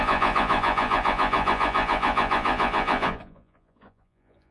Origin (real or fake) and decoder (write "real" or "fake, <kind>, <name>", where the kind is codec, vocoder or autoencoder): fake, vocoder, Vocos